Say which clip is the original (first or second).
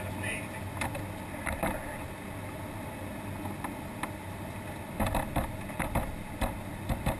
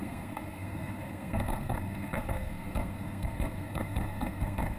first